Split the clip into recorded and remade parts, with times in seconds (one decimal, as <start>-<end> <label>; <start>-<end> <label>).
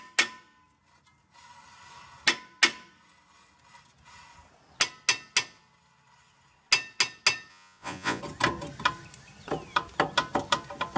0.0-7.5 recorded; 7.5-8.2 remade; 8.2-11.0 recorded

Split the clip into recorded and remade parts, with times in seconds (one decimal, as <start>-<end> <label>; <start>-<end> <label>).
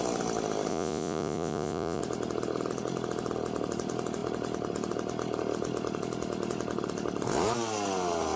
0.0-0.7 recorded; 0.7-2.0 remade; 2.0-8.4 recorded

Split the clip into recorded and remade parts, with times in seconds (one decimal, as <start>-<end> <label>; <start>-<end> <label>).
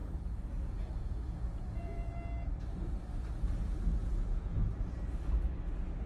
0.0-2.1 remade; 2.1-4.0 recorded; 4.0-4.7 remade; 4.7-6.1 recorded